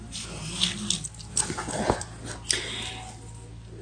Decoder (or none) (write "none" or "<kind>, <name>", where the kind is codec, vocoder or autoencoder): none